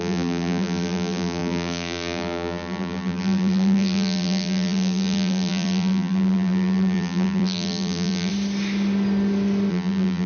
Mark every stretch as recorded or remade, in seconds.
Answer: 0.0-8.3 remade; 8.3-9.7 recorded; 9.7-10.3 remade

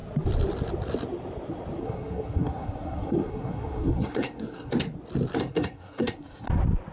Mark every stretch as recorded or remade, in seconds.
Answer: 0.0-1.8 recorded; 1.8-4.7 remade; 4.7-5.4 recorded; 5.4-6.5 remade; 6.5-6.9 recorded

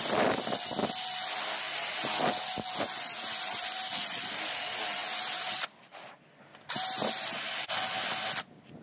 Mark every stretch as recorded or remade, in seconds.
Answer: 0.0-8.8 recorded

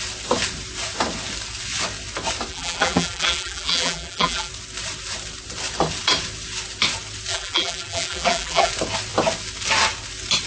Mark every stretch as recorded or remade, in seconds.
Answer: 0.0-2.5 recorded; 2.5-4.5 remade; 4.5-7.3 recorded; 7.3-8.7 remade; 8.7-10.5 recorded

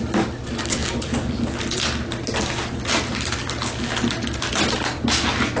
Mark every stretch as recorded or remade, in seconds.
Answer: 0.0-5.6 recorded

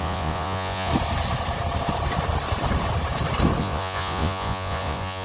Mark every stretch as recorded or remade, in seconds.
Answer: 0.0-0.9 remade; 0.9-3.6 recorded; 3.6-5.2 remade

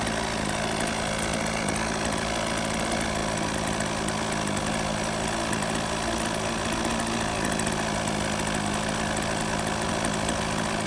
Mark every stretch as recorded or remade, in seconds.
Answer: 0.0-10.9 recorded